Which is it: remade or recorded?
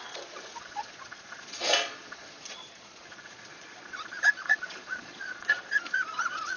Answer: remade